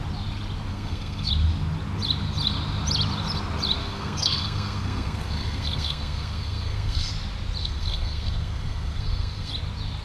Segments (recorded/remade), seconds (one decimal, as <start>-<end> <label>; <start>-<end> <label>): 0.0-0.7 recorded; 0.7-1.3 remade; 1.3-3.8 recorded; 3.8-7.1 remade; 7.1-7.6 recorded; 7.6-9.5 remade; 9.5-10.0 recorded